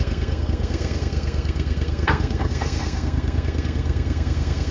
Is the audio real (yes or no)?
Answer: no